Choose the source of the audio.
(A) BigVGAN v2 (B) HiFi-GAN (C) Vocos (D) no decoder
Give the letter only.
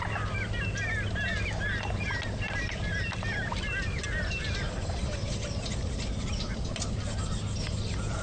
D